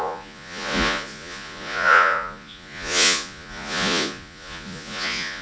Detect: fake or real fake